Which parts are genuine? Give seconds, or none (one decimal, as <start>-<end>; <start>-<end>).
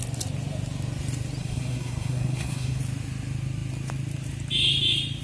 0.0-1.4; 2.8-5.2